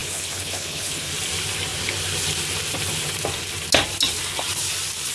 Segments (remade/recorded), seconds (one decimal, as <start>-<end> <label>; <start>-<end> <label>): 0.0-1.1 remade; 1.1-5.1 recorded